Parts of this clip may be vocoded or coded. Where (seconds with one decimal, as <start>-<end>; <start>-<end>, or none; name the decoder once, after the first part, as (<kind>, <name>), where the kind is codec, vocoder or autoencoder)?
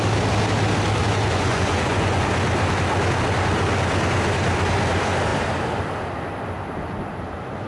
1.0-2.3 (vocoder, Vocos)